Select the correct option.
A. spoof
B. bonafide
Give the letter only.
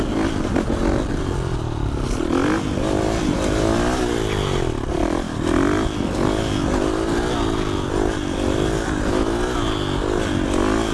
B